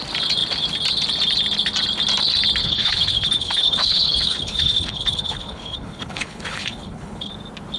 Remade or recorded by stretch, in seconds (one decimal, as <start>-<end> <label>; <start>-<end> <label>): 0.0-2.6 recorded; 2.6-7.3 remade; 7.3-7.8 recorded